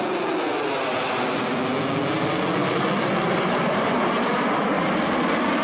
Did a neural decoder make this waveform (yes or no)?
no